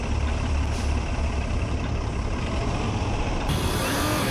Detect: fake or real fake